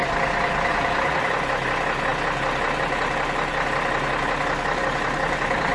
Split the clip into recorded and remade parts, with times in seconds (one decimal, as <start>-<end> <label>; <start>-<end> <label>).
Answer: 0.0-5.7 recorded